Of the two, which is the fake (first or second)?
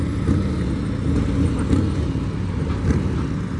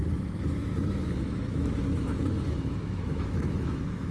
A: second